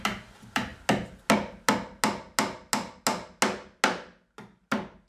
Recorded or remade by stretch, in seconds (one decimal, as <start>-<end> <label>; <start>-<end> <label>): 0.0-5.1 recorded